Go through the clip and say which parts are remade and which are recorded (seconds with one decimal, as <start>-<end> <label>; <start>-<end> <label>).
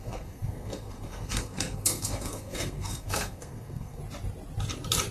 0.0-4.0 remade; 4.0-5.1 recorded